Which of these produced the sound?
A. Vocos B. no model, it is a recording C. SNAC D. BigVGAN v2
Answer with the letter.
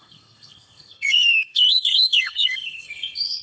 C